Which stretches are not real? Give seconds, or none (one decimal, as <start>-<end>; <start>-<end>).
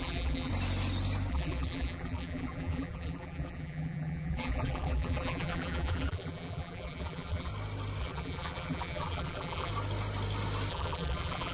0.0-0.5; 1.3-7.5; 8.0-9.7; 10.7-11.5